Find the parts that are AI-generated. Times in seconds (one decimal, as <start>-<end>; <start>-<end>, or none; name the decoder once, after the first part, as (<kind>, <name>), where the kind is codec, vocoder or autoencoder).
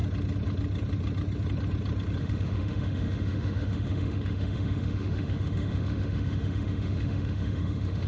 2.2-8.1 (autoencoder, DAC-VAE)